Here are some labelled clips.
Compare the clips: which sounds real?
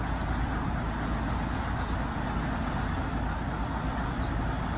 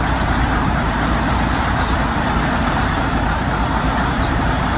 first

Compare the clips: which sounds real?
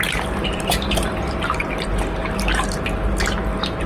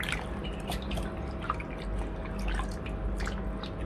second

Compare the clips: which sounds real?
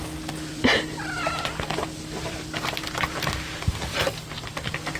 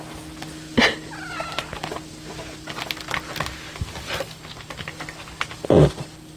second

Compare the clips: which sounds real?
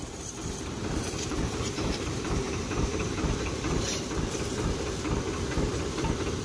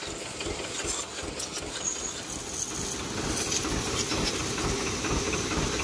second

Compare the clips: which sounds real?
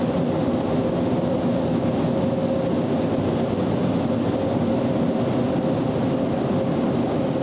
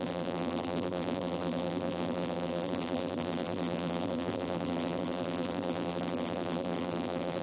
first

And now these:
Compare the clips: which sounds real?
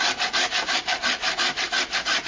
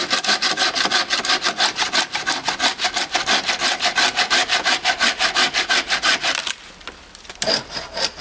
first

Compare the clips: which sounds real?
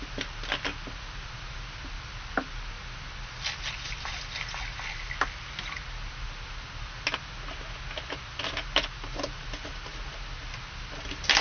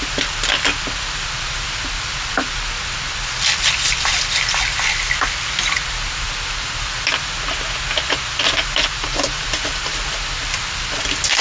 first